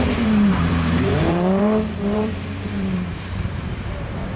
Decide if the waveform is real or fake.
fake